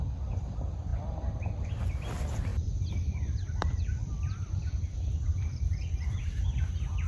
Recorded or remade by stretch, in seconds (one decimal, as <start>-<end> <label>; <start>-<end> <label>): 0.0-0.9 recorded; 0.9-1.8 remade; 1.8-2.5 recorded; 2.5-6.1 remade; 6.1-7.1 recorded